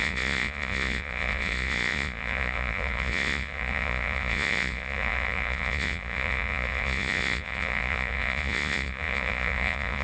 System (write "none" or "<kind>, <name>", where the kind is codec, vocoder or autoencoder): vocoder, Vocos